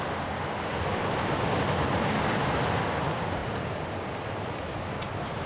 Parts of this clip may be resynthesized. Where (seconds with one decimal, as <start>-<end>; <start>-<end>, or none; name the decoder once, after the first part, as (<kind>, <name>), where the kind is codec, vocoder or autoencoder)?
none